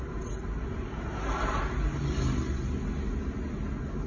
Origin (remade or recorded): recorded